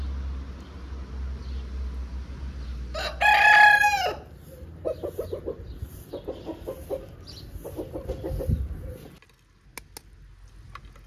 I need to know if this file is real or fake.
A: real